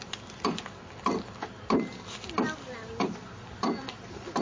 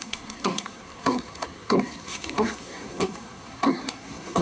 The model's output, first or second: second